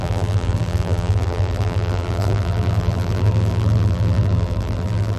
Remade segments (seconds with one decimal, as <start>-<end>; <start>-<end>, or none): 0.0-5.2